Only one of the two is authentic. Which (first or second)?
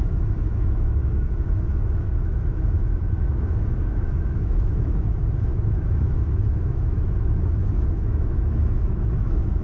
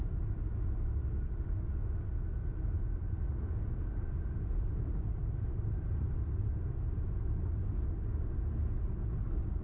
second